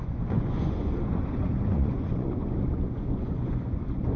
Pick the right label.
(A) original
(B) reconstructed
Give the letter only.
B